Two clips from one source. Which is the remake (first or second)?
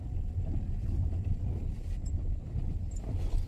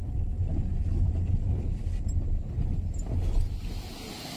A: first